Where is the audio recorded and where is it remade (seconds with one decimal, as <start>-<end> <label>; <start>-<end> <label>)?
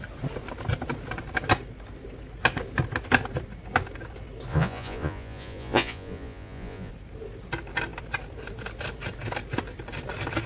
0.0-4.5 recorded; 4.5-6.9 remade; 6.9-10.5 recorded